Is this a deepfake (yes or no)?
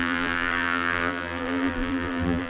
yes